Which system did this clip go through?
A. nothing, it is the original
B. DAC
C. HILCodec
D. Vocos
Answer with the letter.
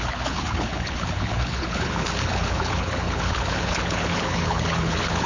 C